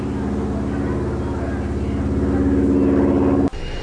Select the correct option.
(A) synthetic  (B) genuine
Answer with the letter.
B